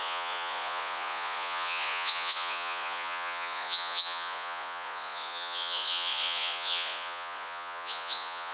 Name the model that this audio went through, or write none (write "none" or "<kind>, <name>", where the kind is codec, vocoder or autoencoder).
vocoder, Vocos